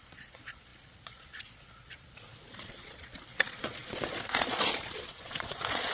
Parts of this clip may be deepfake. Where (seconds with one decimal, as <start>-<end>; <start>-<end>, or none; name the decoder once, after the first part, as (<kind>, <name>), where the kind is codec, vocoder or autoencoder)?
0.0-5.9 (vocoder, Vocos)